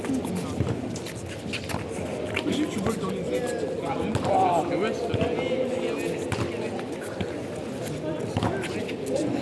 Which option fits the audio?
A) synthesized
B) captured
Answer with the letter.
B